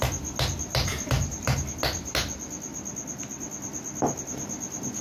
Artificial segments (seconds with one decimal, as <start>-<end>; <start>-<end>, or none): 0.9-1.6